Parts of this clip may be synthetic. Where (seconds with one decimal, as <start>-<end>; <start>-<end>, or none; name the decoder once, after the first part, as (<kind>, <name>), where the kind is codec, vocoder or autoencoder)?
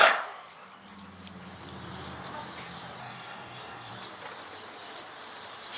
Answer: 3.0-3.9 (codec, DAC)